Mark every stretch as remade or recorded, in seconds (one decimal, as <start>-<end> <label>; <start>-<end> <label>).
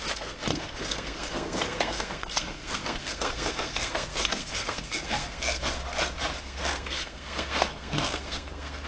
0.0-5.8 remade; 5.8-6.4 recorded; 6.4-8.9 remade